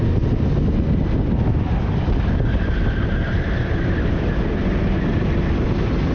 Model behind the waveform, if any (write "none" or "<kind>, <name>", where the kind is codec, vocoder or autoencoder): none